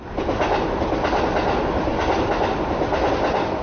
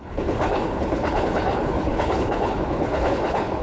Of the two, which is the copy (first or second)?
second